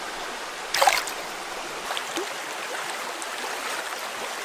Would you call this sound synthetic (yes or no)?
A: no